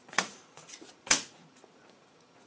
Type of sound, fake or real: fake